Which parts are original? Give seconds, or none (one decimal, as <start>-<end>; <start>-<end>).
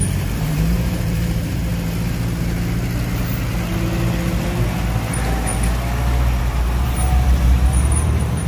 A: 1.7-6.4